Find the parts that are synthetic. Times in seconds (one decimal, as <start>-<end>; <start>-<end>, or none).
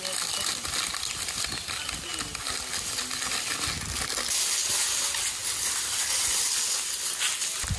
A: 5.4-6.0